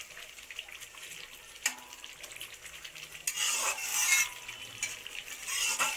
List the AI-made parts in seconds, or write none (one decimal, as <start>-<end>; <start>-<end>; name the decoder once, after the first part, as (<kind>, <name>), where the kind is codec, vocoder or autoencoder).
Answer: none